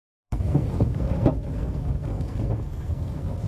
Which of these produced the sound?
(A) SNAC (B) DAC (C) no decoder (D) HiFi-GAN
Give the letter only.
A